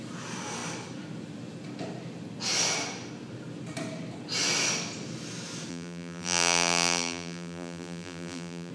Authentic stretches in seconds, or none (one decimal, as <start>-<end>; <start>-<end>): 0.0-5.7